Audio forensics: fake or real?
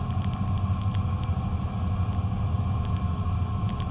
real